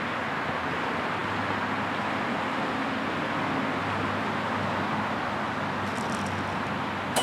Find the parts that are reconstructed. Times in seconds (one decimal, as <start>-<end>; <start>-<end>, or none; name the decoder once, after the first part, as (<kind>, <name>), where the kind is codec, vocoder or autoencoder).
none